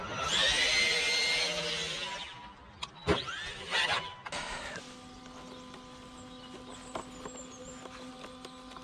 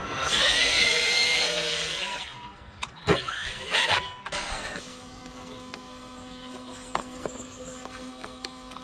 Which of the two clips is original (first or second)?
first